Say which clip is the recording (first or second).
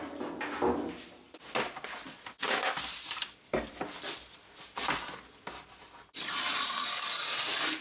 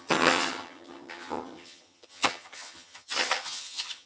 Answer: first